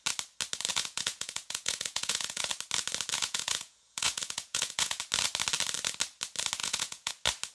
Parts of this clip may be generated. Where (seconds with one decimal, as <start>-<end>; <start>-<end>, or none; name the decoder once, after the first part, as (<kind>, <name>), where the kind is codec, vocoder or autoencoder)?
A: 0.7-2.5 (vocoder, Vocos); 3.1-5.0; 6.6-7.1